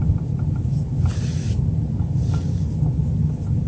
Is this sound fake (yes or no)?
no